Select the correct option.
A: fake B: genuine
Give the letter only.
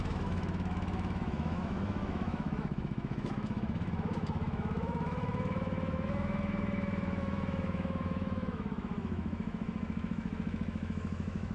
A